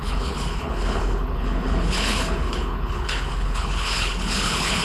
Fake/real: fake